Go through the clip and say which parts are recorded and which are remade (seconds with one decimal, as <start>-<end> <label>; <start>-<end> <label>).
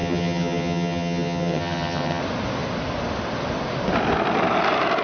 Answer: 0.0-2.2 remade; 2.2-5.0 recorded